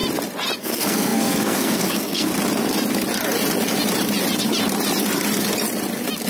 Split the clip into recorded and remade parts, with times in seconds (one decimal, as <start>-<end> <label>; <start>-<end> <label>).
0.0-0.6 recorded; 0.6-2.3 remade; 2.3-6.3 recorded